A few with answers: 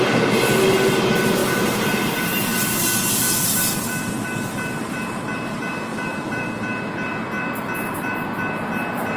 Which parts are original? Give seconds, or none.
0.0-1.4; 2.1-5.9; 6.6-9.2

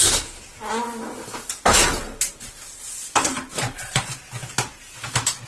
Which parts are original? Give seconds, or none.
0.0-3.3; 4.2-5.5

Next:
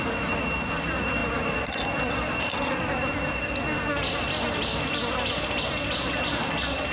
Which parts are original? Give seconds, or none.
0.0-6.9